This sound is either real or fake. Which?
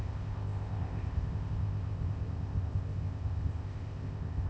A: fake